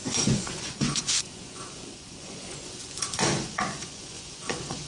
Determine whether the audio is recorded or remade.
remade